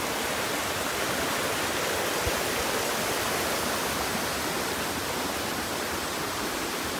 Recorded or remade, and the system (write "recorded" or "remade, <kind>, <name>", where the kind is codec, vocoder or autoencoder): recorded